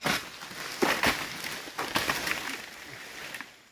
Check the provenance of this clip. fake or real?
real